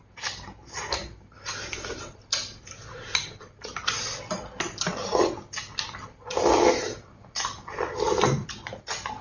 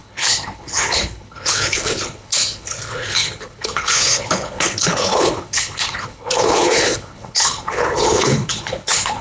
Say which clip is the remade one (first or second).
second